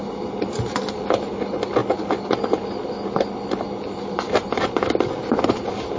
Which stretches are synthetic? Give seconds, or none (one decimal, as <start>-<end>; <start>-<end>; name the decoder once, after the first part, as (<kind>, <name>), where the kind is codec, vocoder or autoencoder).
none